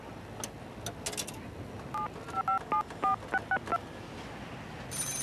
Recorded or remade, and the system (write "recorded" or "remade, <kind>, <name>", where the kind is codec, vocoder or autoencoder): recorded